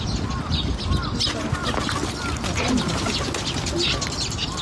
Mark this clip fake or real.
real